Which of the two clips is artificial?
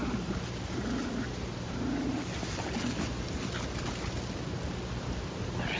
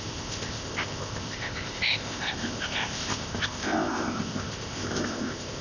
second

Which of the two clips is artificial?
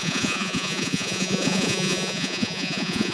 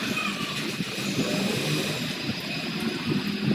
first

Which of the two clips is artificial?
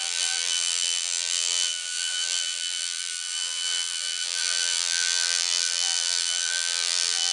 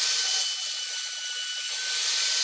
first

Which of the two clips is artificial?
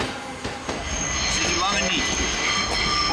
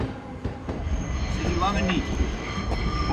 second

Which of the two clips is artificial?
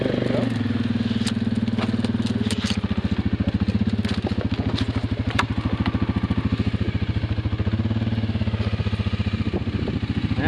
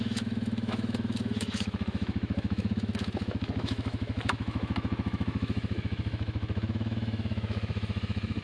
second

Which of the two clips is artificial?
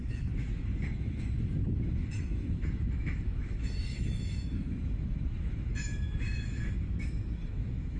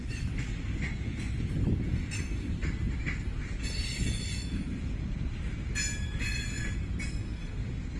first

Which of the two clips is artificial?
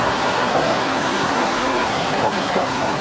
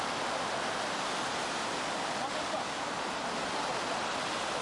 first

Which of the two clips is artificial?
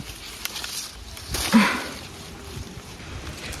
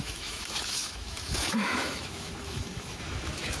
second